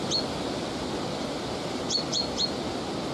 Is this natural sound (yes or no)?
yes